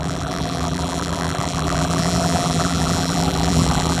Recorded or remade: remade